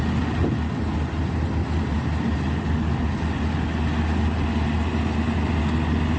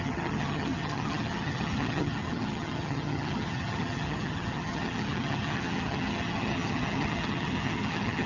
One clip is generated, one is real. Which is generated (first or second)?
second